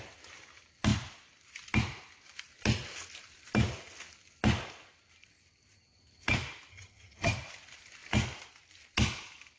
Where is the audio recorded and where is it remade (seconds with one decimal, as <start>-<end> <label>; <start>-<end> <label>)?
0.0-6.7 recorded; 6.7-7.3 remade; 7.3-9.6 recorded